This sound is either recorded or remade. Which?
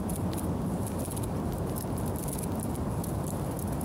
recorded